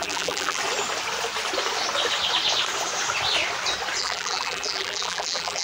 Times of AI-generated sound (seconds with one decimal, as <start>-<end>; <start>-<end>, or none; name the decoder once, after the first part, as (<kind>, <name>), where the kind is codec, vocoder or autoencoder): 0.0-0.6 (vocoder, BigVGAN v2); 4.0-5.6